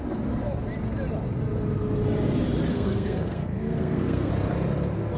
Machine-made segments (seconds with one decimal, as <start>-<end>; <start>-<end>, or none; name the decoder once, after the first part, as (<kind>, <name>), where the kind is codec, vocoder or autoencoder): 2.7-4.3 (codec, SNAC)